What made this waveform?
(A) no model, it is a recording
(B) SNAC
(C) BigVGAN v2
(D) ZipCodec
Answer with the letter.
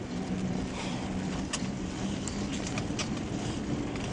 A